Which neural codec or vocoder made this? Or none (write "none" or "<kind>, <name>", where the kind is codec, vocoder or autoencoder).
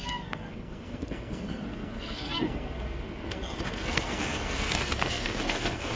codec, SNAC